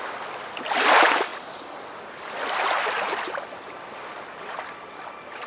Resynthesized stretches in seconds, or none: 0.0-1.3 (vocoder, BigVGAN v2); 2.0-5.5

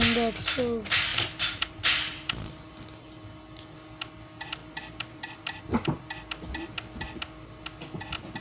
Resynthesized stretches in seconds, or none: 1.1-2.7 (vocoder, BigVGAN v2); 4.6-5.6

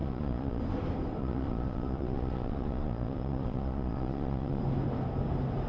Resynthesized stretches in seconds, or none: 0.0-0.6 (vocoder, Vocos); 1.2-4.6

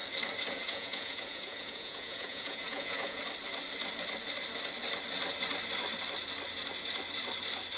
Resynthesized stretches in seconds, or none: 0.5-3.2 (vocoder, Vocos)

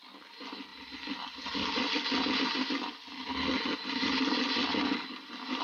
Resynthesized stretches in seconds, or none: none

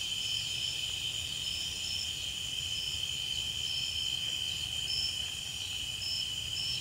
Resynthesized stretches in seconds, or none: 0.0-1.0 (vocoder, BigVGAN v2); 5.1-6.8

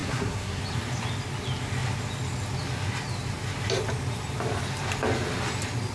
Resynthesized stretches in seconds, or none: 0.0-0.6 (codec, SNAC)